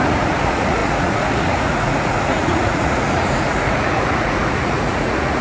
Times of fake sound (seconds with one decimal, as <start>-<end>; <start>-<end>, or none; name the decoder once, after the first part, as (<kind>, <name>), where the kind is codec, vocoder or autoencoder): 0.0-5.4 (vocoder, Vocos)